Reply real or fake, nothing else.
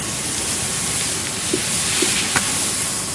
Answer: real